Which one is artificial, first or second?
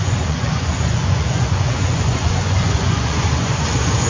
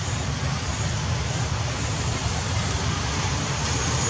first